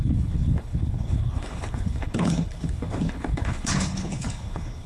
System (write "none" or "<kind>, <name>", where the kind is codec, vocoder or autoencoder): codec, HILCodec